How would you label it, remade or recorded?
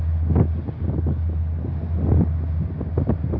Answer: recorded